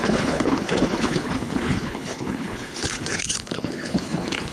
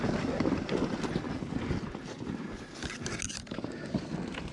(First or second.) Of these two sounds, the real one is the second